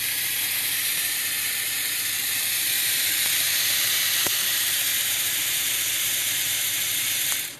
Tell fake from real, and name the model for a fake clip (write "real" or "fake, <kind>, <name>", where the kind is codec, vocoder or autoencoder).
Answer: fake, vocoder, BigVGAN v2